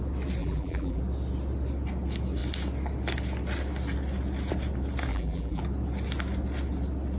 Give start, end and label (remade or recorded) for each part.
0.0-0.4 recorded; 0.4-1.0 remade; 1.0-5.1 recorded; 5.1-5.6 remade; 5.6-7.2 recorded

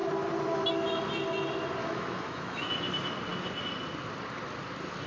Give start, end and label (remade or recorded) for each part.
0.0-1.8 recorded; 1.8-2.9 remade; 2.9-5.1 recorded

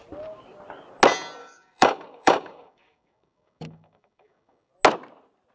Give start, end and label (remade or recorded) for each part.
0.0-1.4 recorded; 1.4-4.7 remade; 4.7-5.5 recorded

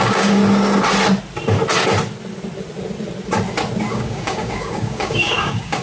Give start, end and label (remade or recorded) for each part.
0.0-0.4 remade; 0.4-3.9 recorded; 3.9-5.8 remade

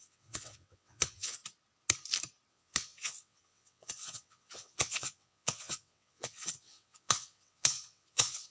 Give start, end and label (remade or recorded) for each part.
0.0-1.4 remade; 1.4-2.5 recorded; 2.5-8.5 remade

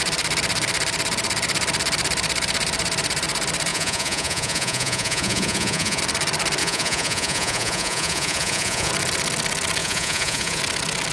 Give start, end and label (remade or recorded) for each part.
0.0-3.7 recorded; 3.7-6.0 remade; 6.0-6.6 recorded; 6.6-8.9 remade; 8.9-9.8 recorded; 9.8-10.6 remade; 10.6-11.1 recorded